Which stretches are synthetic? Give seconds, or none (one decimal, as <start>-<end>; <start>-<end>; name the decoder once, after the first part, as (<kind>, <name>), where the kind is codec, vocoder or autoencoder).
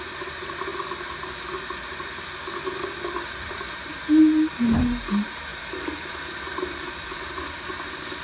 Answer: 0.0-0.7 (vocoder, BigVGAN v2); 3.5-8.2